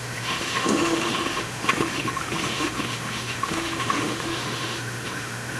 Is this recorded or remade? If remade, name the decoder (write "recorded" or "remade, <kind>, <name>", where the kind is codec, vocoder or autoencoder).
remade, autoencoder, DAC-VAE